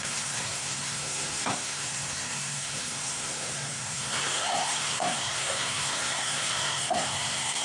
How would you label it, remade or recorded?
remade